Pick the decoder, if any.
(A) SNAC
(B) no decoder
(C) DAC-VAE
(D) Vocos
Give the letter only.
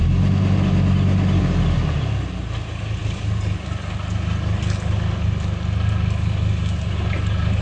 B